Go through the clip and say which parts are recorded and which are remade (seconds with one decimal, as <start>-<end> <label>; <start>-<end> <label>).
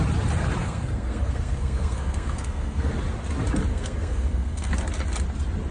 0.0-0.6 recorded; 0.6-2.9 remade; 2.9-3.7 recorded; 3.7-4.7 remade; 4.7-5.7 recorded